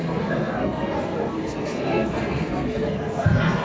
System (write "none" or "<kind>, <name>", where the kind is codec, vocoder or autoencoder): codec, SNAC